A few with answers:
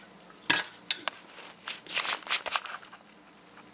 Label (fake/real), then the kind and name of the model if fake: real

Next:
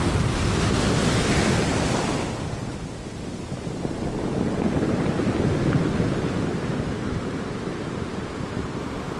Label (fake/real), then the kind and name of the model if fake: real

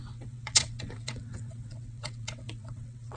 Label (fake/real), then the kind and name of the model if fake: fake, vocoder, WaveNeXt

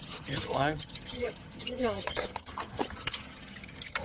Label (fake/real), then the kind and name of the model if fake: fake, vocoder, HiFi-GAN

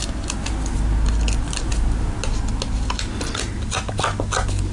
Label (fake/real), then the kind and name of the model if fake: real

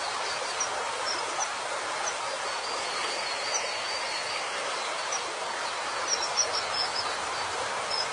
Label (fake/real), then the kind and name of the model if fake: real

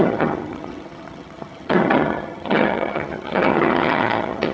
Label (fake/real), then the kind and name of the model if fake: fake, vocoder, HiFi-GAN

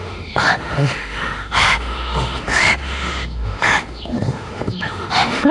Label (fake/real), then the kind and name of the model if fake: fake, autoencoder, DAC-VAE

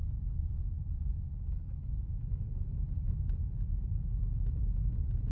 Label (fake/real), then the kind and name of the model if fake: real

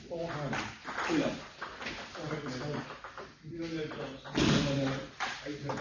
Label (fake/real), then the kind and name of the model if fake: real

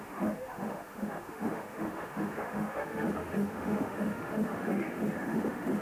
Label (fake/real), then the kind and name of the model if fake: fake, autoencoder, DAC-VAE